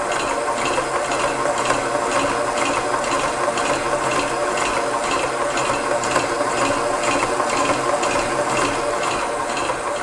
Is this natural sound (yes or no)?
yes